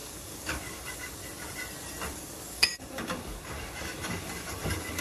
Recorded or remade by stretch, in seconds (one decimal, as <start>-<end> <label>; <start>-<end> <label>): 0.0-1.2 remade; 1.2-2.1 recorded; 2.1-5.0 remade